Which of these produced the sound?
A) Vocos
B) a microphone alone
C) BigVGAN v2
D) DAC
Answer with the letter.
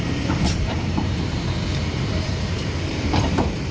C